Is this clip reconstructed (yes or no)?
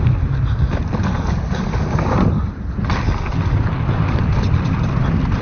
no